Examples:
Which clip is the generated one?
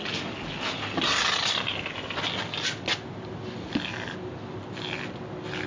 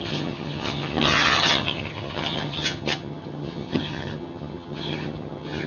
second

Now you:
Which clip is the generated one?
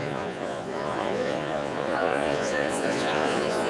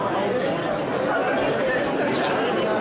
first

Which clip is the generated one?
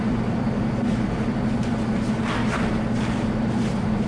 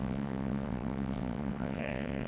second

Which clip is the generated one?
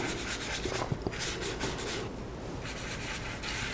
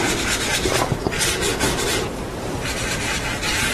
second